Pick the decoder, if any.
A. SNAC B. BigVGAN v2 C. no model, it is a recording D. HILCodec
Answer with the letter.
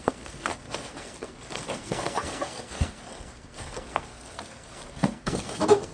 A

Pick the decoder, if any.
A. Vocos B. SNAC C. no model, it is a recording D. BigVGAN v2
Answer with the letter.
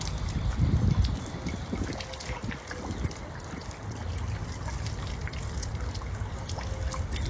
C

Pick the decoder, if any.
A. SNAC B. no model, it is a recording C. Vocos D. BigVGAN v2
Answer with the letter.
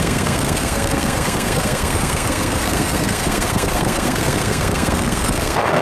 A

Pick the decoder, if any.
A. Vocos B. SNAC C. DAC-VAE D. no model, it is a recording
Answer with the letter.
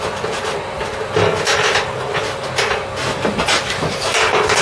D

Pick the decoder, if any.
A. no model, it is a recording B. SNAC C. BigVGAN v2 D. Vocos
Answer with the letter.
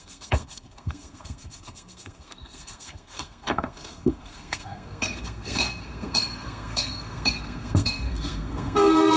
B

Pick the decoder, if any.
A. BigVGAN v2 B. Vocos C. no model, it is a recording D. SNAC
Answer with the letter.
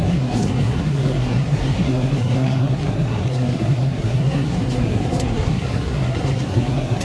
D